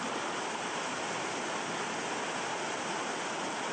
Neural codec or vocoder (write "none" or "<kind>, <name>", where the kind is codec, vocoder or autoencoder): none